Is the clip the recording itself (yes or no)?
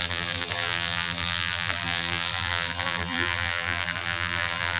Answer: no